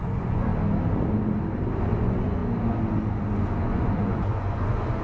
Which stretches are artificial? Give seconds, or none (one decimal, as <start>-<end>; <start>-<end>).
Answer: 0.0-0.5; 2.0-2.4; 3.6-5.0